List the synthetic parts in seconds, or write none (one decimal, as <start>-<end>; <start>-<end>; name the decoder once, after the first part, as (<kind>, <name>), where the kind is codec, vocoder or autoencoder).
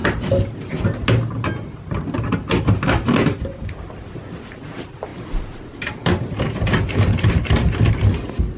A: none